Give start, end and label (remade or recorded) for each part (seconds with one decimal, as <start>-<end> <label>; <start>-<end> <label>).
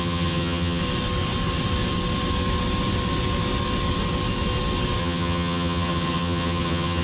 0.0-0.8 remade; 0.8-5.0 recorded; 5.0-7.0 remade